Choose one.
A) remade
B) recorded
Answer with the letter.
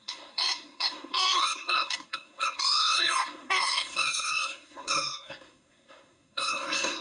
A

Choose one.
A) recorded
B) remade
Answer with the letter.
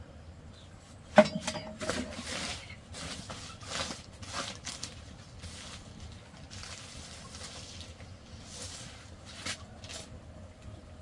A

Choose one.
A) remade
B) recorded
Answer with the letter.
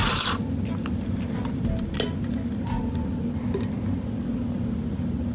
B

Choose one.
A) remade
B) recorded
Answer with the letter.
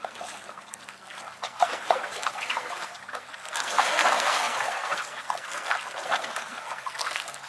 A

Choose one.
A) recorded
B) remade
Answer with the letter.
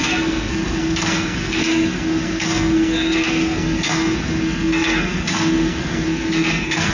B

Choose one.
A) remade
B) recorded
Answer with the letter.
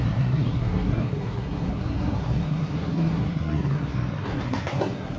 A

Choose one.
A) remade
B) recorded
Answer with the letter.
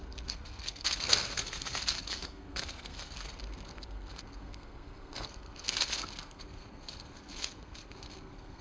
A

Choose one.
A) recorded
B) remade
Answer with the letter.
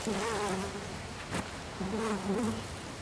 A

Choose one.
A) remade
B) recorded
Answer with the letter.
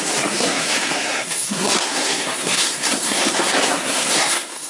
A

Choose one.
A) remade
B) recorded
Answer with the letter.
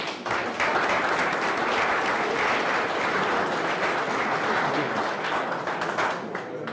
B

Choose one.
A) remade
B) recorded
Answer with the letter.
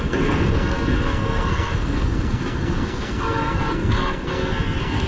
A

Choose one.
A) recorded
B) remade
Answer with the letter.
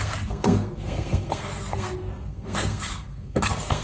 B